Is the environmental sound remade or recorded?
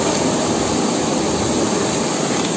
recorded